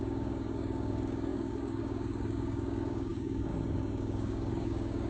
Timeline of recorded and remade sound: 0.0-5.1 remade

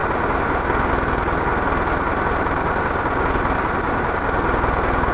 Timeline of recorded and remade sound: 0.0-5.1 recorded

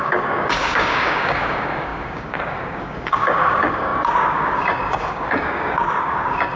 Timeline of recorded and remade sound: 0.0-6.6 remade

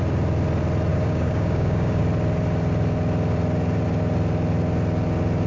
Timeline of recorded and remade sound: 0.0-0.9 recorded; 0.9-2.0 remade; 2.0-5.5 recorded

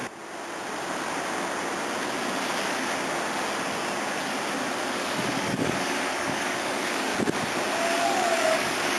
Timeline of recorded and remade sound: 0.0-4.9 recorded; 4.9-7.1 remade; 7.1-8.0 recorded; 8.0-9.0 remade

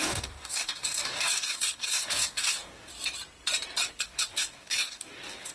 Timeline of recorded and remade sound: 0.0-2.9 remade; 2.9-4.0 recorded; 4.0-5.5 remade